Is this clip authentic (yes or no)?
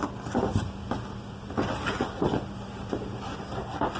yes